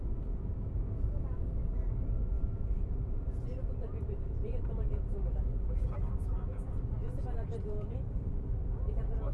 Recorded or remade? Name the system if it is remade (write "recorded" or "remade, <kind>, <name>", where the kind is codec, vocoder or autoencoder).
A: remade, vocoder, BigVGAN v2